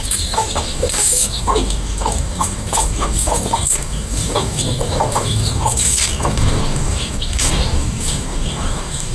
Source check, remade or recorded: remade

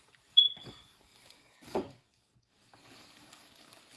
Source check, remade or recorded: remade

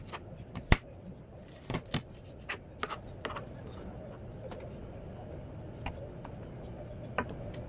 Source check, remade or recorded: recorded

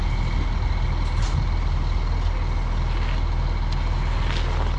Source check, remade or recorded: recorded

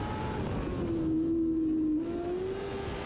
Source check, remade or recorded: recorded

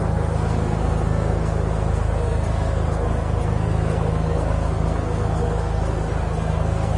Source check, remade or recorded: remade